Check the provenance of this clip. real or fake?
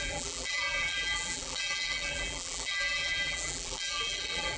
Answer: fake